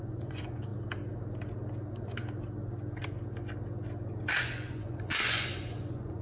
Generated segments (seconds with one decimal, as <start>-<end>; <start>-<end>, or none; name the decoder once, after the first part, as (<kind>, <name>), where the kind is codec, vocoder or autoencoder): 0.0-0.7 (vocoder, Vocos); 4.4-6.2